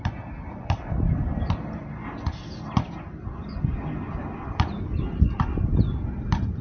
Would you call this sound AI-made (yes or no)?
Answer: no